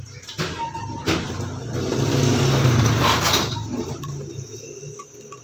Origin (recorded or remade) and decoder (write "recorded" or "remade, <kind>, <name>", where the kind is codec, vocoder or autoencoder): recorded